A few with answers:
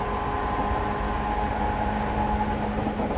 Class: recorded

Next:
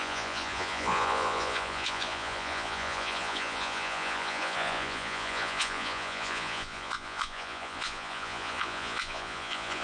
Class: remade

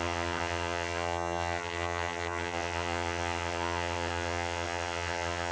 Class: remade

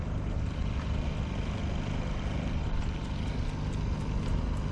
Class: recorded